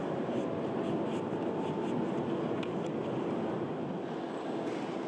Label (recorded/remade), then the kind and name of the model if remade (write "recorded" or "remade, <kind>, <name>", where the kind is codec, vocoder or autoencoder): recorded